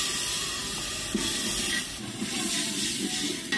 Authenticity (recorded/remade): recorded